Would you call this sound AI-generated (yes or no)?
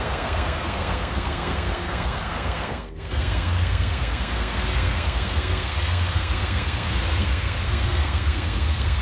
yes